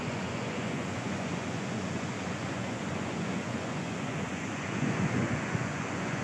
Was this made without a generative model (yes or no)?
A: no